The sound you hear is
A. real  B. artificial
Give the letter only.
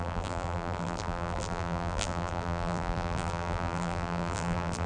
B